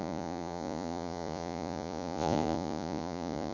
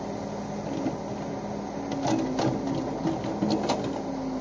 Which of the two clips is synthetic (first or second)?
first